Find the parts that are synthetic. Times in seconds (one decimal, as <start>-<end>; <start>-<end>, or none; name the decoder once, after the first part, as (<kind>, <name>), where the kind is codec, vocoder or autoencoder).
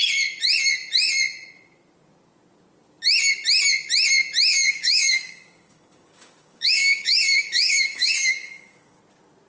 4.5-9.0 (codec, DAC)